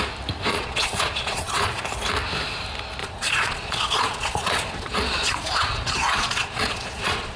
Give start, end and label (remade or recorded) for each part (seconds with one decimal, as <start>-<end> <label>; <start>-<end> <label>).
0.0-0.5 recorded; 0.5-1.8 remade; 1.8-3.0 recorded; 3.0-7.4 remade